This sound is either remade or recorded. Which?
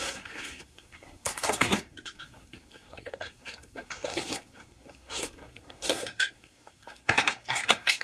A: remade